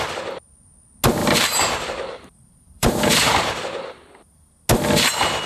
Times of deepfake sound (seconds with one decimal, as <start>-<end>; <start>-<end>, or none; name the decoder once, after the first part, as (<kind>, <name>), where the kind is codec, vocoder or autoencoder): 1.2-4.5 (vocoder, BigVGAN v2)